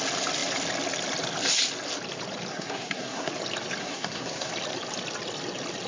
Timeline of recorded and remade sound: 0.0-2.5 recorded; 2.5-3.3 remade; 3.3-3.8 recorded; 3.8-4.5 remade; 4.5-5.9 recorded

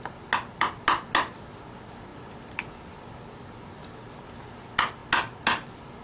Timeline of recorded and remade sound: 0.0-6.0 recorded